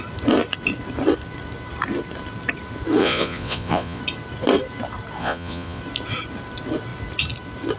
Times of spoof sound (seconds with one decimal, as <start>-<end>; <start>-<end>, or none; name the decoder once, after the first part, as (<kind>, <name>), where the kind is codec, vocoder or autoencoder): 3.0-4.0 (vocoder, Vocos); 5.2-5.8